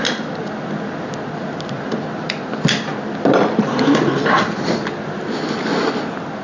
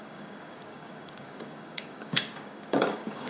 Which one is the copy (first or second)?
second